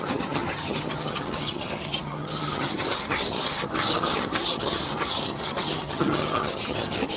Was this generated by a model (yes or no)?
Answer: yes